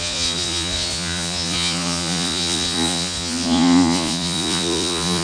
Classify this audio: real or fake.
fake